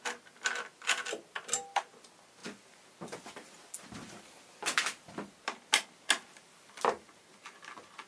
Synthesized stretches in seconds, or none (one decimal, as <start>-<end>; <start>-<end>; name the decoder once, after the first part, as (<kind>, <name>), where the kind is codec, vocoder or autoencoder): none